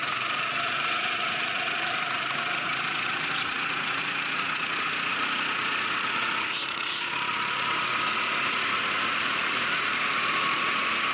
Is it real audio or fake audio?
fake